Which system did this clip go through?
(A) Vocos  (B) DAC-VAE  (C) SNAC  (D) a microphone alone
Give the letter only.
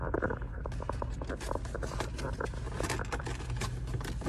D